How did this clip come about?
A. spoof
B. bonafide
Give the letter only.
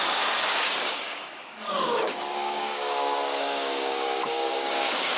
A